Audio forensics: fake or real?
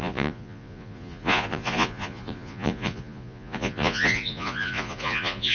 fake